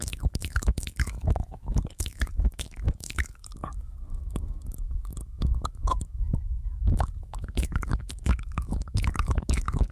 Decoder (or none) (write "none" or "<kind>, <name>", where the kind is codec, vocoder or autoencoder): autoencoder, DAC-VAE